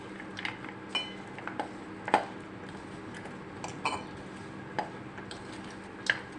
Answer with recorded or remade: recorded